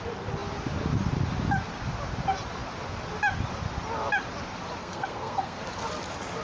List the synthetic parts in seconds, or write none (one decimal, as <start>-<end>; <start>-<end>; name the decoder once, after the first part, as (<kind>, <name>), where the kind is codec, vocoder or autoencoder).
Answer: 4.8-5.6 (codec, SNAC)